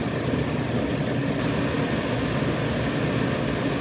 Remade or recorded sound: recorded